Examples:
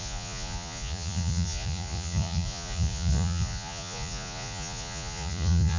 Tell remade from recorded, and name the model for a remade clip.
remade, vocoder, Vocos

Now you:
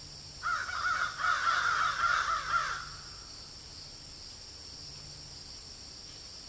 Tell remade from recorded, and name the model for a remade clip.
recorded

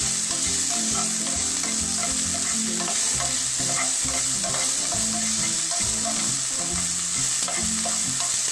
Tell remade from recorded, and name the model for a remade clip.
recorded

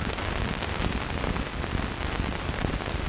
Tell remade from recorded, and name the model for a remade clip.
recorded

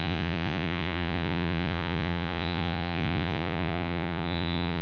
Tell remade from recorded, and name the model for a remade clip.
remade, vocoder, Vocos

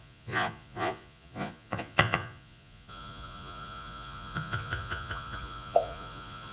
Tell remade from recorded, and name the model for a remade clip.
remade, vocoder, Vocos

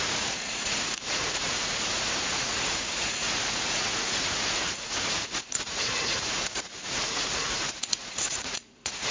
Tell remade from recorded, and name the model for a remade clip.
remade, vocoder, Vocos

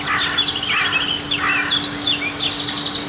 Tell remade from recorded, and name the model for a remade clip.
recorded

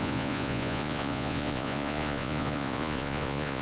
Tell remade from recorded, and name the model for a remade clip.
remade, vocoder, Vocos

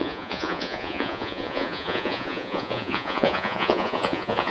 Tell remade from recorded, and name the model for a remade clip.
remade, vocoder, Vocos